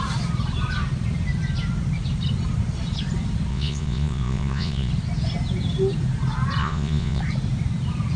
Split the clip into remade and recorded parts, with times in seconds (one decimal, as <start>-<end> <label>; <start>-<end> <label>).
0.0-3.5 recorded; 3.5-4.9 remade; 4.9-6.6 recorded; 6.6-7.2 remade; 7.2-8.2 recorded